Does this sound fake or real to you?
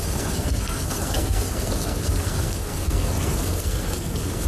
fake